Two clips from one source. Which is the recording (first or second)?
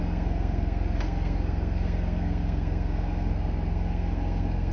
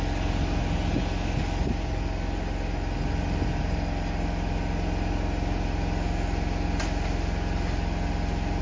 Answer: second